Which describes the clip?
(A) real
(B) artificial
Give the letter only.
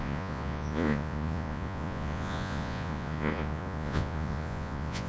B